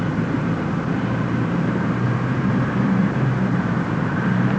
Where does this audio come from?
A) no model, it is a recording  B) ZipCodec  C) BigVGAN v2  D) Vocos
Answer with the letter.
C